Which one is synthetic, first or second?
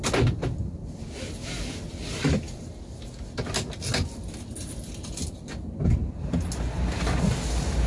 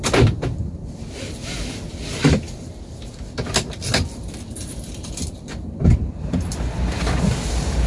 second